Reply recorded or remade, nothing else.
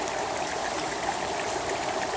recorded